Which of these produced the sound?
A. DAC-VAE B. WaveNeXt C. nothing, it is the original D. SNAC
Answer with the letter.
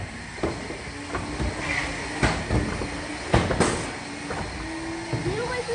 C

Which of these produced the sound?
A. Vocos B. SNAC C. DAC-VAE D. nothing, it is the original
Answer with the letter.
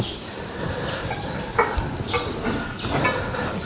D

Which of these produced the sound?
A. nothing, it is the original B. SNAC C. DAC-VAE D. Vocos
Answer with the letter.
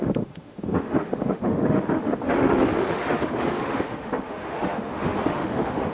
C